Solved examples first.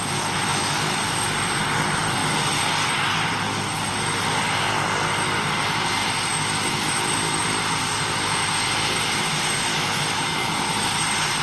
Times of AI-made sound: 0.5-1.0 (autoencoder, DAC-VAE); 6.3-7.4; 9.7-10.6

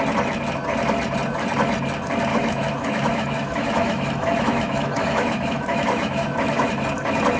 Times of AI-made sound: 2.3-6.7 (autoencoder, DAC-VAE)